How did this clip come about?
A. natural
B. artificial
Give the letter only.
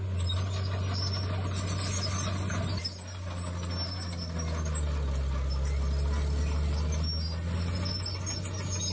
A